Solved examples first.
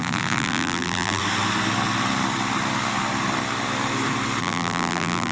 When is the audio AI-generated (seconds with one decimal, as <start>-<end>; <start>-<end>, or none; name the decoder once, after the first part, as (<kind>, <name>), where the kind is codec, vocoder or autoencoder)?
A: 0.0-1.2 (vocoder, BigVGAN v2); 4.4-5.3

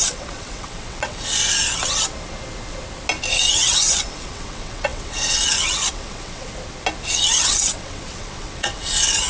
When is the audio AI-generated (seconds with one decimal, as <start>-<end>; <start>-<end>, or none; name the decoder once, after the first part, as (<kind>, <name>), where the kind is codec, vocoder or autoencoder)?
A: 0.0-1.4 (vocoder, WaveNeXt); 3.5-6.5; 7.3-9.3

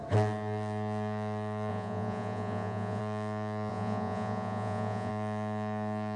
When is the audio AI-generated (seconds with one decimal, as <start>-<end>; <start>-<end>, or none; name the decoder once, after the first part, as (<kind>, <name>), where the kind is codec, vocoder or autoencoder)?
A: 1.7-3.0 (vocoder, Vocos); 3.7-5.1

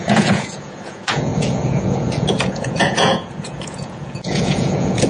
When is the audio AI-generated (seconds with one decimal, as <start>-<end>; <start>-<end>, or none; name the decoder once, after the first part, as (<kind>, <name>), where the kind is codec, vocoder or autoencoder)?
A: 0.0-5.1 (vocoder, Vocos)